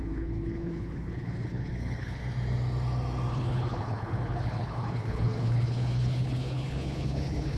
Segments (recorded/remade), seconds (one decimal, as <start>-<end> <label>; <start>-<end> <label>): 0.0-2.2 remade; 2.2-3.3 recorded; 3.3-7.6 remade